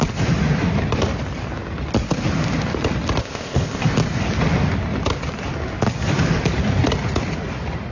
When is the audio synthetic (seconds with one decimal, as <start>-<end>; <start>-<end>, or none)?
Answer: 3.2-3.8